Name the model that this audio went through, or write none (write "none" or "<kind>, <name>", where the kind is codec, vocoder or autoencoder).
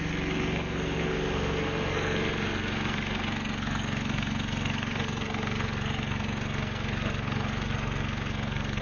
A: codec, SNAC